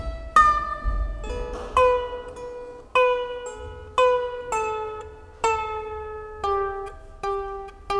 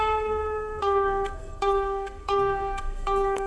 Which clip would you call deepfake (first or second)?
second